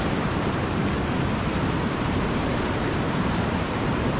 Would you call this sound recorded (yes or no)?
no